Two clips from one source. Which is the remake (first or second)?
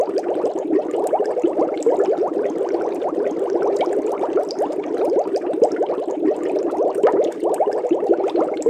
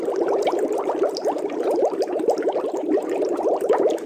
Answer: second